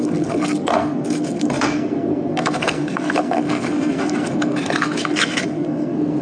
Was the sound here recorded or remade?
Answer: remade